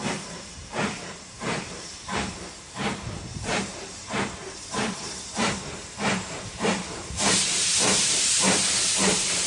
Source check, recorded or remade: remade